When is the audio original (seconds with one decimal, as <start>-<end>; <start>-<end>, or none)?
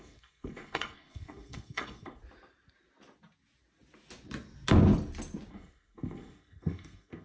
2.2-5.5